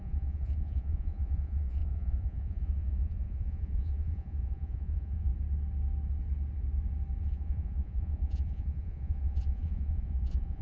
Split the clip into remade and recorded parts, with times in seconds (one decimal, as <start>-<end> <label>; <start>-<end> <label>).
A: 0.0-5.3 remade; 5.3-7.2 recorded; 7.2-10.6 remade